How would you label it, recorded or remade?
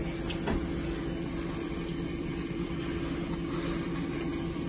recorded